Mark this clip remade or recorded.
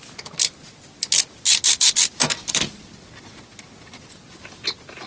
recorded